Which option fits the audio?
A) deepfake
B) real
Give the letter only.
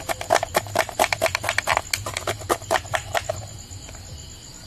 B